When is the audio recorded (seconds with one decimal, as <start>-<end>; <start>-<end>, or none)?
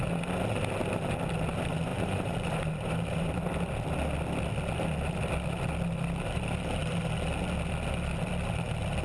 0.0-1.9; 3.3-9.0